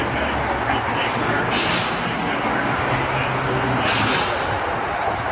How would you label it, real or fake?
real